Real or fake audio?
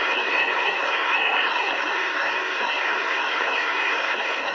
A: fake